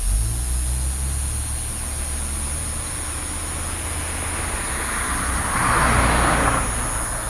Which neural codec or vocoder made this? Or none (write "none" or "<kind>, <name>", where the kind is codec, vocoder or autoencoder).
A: none